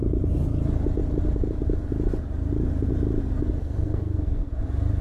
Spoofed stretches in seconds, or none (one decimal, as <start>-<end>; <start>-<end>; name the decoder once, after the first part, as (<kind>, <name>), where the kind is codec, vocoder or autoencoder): 3.6-4.5 (codec, SNAC)